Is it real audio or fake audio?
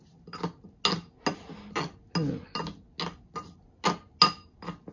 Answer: real